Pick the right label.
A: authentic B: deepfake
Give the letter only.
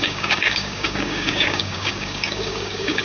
B